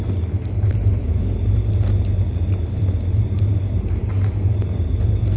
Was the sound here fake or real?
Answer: fake